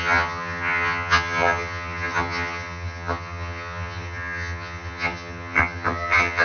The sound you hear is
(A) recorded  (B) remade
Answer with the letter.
B